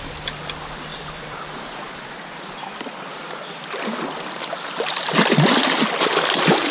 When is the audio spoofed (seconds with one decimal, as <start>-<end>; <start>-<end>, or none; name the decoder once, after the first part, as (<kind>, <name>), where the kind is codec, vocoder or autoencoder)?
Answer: 0.9-3.3 (vocoder, BigVGAN v2)